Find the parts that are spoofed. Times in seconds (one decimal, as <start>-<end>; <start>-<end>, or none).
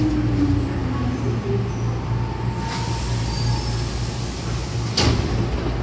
none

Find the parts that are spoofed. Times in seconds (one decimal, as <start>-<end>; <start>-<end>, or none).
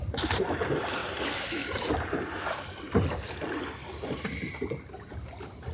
none